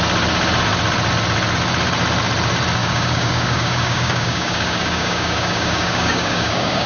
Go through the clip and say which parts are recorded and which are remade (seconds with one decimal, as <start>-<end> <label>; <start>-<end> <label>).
0.0-2.8 recorded; 2.8-6.9 remade